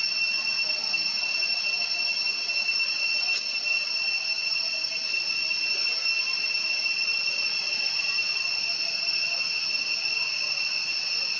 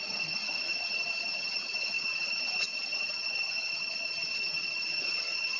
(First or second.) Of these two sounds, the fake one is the second